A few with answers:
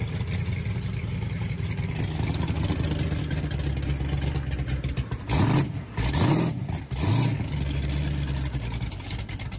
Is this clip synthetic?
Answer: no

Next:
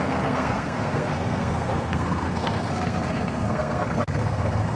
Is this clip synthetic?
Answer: yes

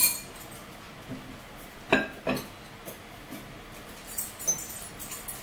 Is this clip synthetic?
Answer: no